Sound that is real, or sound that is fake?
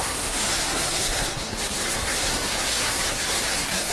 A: fake